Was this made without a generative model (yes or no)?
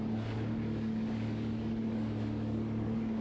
no